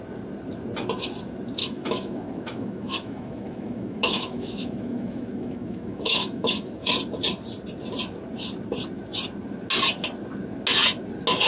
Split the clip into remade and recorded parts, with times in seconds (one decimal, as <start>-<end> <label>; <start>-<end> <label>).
0.0-1.6 recorded; 1.6-6.9 remade; 6.9-11.5 recorded